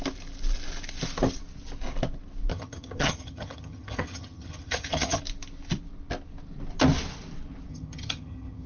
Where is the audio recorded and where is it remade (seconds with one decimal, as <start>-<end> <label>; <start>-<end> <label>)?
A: 0.0-2.5 recorded; 2.5-5.2 remade; 5.2-7.7 recorded; 7.7-8.7 remade